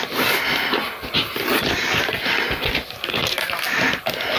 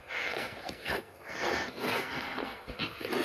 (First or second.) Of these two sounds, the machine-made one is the second